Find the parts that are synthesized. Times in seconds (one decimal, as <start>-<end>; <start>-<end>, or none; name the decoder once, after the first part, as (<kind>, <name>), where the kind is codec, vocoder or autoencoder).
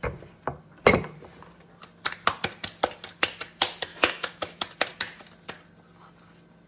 3.9-4.6 (autoencoder, DAC-VAE)